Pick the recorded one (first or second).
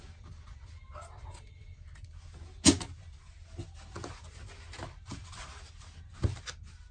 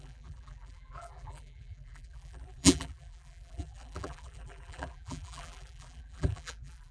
first